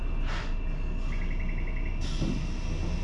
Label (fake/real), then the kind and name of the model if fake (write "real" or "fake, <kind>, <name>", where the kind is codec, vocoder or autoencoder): real